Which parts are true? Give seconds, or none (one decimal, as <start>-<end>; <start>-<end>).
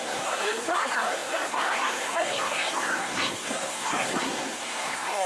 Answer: none